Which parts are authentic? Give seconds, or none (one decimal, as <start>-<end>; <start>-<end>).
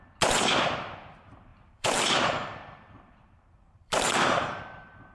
0.0-1.5; 4.6-5.1